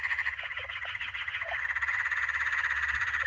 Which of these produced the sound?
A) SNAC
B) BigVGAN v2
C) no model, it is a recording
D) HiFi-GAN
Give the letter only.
D